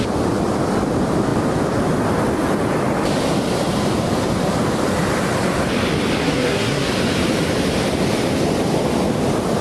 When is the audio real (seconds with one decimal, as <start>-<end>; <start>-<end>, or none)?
0.0-6.2; 6.9-9.6